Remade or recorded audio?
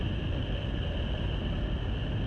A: recorded